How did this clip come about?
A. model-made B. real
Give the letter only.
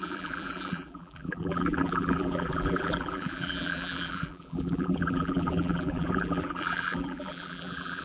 A